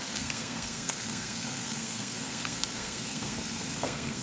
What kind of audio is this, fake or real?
fake